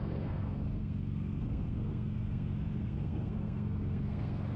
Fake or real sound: fake